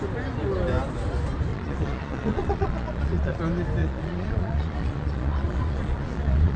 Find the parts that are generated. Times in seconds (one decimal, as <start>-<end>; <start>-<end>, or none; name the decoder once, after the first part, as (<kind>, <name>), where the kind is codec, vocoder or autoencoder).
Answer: 1.5-3.4 (vocoder, Vocos); 3.8-6.6